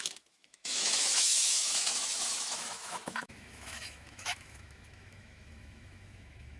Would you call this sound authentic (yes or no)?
no